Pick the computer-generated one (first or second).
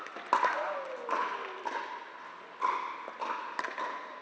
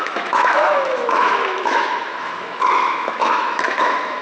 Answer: second